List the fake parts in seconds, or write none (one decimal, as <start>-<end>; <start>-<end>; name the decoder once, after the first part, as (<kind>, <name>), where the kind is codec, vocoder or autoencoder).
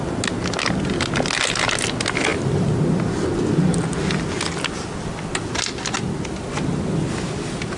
none